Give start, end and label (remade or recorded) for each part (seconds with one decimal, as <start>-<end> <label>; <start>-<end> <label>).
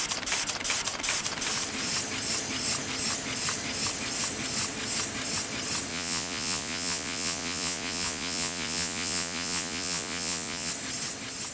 0.0-5.9 recorded; 5.9-10.7 remade; 10.7-11.5 recorded